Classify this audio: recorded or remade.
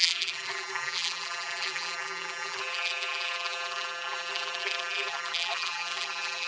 remade